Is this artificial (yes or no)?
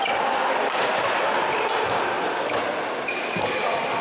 no